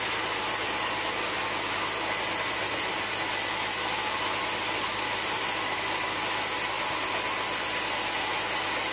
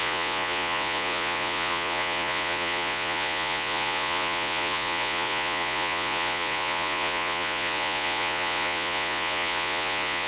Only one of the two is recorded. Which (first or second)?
first